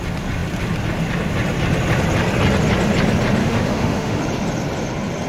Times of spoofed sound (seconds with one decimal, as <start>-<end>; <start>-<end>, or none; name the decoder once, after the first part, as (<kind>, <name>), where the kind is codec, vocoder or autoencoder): 3.4-4.2 (autoencoder, DAC-VAE)